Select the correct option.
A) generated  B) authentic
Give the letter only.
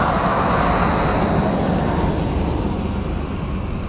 B